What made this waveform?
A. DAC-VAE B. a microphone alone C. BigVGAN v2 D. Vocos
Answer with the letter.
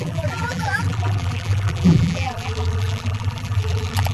C